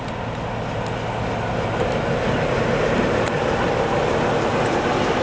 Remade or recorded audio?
recorded